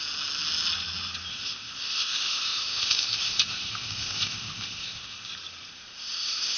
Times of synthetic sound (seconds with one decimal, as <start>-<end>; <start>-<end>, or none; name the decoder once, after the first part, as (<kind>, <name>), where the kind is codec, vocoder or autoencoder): 1.3-5.3 (codec, ZipCodec); 5.7-6.6